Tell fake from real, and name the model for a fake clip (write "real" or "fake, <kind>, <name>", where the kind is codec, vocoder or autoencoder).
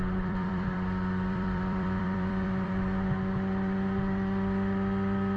fake, vocoder, BigVGAN v2